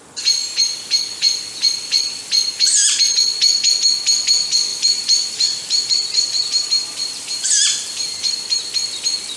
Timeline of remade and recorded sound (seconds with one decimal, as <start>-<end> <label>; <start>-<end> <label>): 0.0-0.4 recorded; 0.4-1.0 remade; 1.0-4.7 recorded; 4.7-8.6 remade; 8.6-9.4 recorded